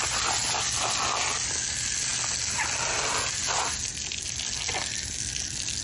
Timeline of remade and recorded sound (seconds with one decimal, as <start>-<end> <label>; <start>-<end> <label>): 0.0-5.8 recorded